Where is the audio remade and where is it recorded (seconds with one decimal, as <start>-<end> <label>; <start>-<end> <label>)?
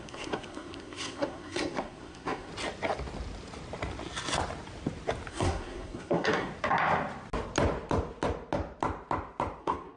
0.0-2.5 remade; 2.5-5.3 recorded; 5.3-6.5 remade; 6.5-9.6 recorded; 9.6-10.0 remade